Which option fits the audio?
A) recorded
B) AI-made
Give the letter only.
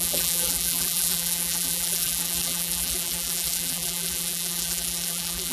B